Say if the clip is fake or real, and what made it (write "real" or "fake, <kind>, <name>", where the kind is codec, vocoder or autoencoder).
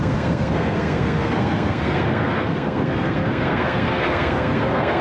fake, codec, SNAC